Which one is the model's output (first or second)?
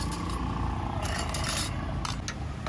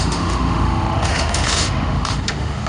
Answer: second